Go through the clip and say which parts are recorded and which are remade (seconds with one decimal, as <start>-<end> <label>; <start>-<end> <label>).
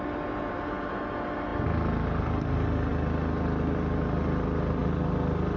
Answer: 0.0-5.6 recorded